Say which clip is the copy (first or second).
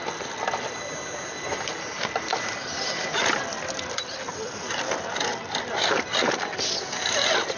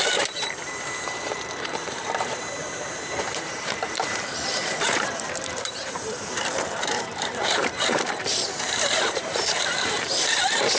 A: second